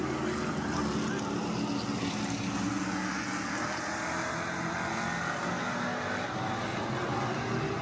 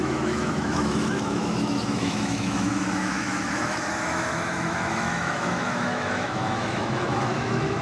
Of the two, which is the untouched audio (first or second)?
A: first